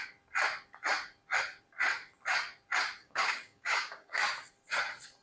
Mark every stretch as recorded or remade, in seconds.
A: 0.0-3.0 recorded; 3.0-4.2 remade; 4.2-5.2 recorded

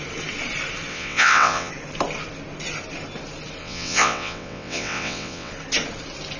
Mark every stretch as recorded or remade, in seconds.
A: 0.0-0.9 recorded; 0.9-1.7 remade; 1.7-3.6 recorded; 3.6-5.5 remade; 5.5-6.4 recorded

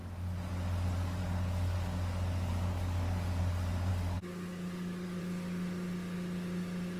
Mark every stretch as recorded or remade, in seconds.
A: 0.0-1.2 recorded; 1.2-3.4 remade; 3.4-3.9 recorded; 3.9-5.2 remade; 5.2-7.0 recorded

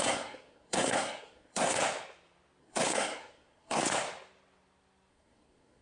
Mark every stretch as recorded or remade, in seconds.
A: 0.0-1.8 remade; 1.8-2.6 recorded; 2.6-3.8 remade; 3.8-5.1 recorded; 5.1-5.8 remade

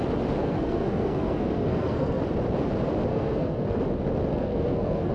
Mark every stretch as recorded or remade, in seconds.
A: 0.0-0.4 recorded; 0.4-2.2 remade; 2.2-3.1 recorded; 3.1-3.8 remade; 3.8-4.3 recorded; 4.3-5.1 remade

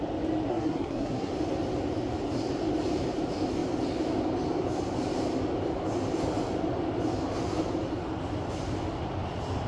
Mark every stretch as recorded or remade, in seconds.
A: 0.0-0.5 recorded; 0.5-1.3 remade; 1.3-9.7 recorded